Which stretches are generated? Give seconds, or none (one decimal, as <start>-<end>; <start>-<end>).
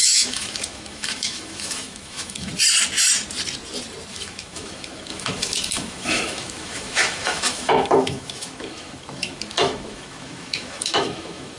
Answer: 0.0-2.5; 4.1-11.6